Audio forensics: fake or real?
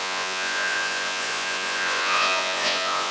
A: fake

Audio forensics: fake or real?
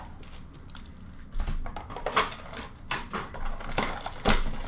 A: real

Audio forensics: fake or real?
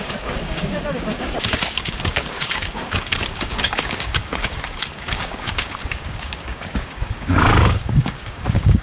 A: fake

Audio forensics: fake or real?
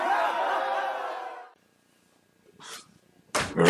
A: real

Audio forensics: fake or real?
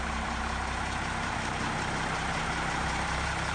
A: fake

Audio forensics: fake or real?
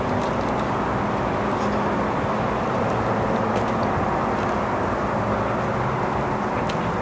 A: real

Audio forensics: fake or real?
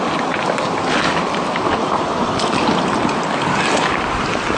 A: real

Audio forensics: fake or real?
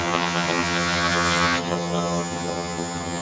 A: fake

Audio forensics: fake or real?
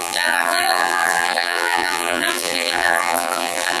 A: fake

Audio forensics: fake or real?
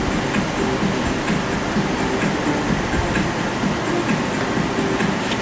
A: real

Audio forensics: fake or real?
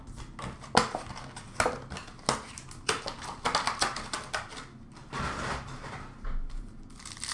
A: real